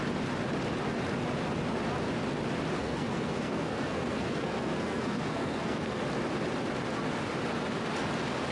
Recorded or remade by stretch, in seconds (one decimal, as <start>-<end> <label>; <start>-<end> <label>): 0.0-2.8 recorded; 2.8-6.0 remade; 6.0-8.5 recorded

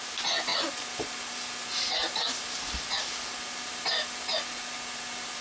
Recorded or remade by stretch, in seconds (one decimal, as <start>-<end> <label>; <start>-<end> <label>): 0.0-5.4 recorded

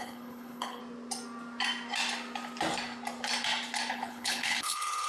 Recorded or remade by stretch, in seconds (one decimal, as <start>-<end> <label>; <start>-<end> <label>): 0.0-0.8 remade; 0.8-3.9 recorded; 3.9-5.1 remade

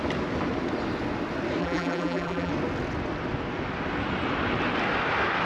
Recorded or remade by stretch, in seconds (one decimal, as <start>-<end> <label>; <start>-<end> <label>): 0.0-1.6 recorded; 1.6-2.5 remade; 2.5-5.4 recorded

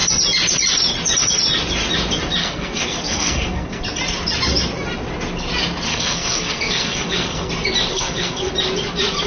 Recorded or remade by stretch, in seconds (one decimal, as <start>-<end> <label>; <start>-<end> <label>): 0.0-2.4 recorded; 2.4-3.8 remade; 3.8-5.9 recorded; 5.9-7.5 remade; 7.5-7.9 recorded; 7.9-8.5 remade; 8.5-9.3 recorded

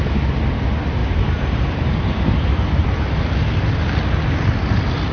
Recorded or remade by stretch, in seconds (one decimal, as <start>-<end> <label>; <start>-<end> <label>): 0.0-1.0 recorded; 1.0-2.1 remade; 2.1-5.1 recorded

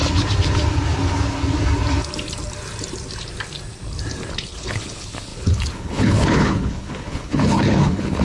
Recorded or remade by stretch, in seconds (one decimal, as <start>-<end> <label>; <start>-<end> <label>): 0.0-4.3 recorded; 4.3-8.2 remade

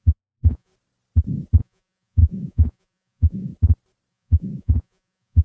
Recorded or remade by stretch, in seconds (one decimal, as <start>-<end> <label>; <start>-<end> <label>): 0.0-0.7 remade; 0.7-1.6 recorded; 1.6-3.5 remade; 3.5-4.1 recorded; 4.1-5.4 remade